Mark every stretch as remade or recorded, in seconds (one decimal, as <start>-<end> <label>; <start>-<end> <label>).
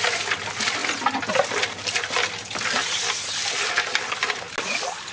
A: 0.0-5.1 recorded